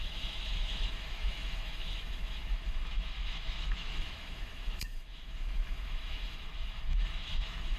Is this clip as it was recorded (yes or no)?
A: no